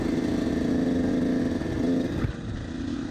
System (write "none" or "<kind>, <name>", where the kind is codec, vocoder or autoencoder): none